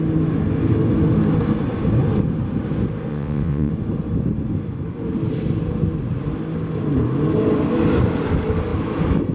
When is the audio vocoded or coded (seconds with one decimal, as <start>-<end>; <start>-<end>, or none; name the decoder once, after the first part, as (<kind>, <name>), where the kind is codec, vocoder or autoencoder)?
3.1-3.7 (vocoder, WaveNeXt)